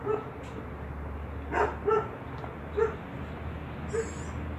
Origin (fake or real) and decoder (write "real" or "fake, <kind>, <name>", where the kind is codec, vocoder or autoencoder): real